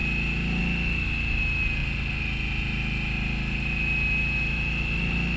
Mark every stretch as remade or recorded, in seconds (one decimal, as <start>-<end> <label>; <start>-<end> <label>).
0.0-5.4 recorded